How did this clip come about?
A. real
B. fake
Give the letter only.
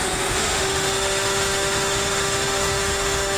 B